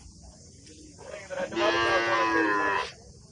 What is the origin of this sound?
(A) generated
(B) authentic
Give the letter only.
B